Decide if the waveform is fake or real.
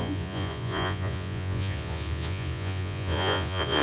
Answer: fake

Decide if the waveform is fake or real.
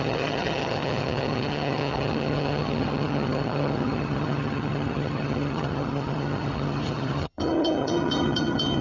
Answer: fake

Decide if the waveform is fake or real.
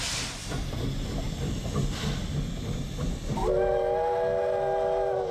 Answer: real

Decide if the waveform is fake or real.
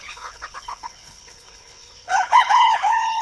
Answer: fake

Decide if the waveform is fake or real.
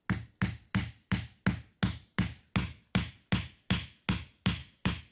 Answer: real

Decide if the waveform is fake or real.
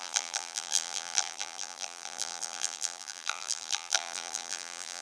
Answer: fake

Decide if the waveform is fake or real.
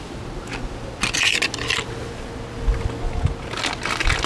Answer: real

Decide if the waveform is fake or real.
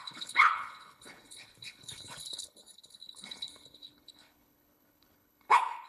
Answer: fake